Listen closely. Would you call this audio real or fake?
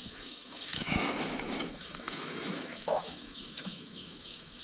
fake